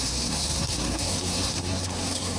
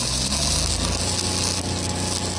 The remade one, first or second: first